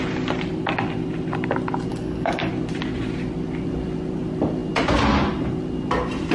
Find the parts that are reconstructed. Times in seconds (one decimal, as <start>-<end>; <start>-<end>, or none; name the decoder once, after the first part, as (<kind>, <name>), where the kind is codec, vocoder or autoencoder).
1.9-2.5 (codec, DAC)